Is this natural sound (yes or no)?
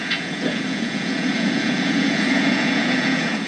no